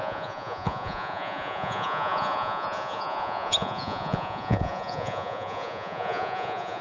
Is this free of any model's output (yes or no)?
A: no